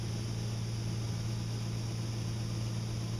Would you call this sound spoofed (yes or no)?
no